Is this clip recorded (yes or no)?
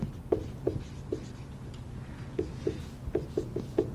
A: yes